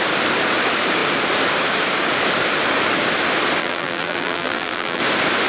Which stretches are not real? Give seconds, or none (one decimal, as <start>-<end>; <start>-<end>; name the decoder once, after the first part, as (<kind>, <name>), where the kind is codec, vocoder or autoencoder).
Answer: 3.6-5.0 (vocoder, BigVGAN v2)